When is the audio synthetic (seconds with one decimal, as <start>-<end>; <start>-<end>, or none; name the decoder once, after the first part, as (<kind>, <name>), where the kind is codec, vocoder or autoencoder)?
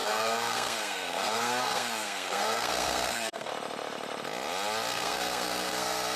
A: 0.0-3.5 (codec, SNAC); 4.9-6.2